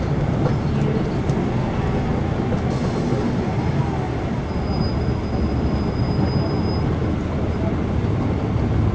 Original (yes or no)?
yes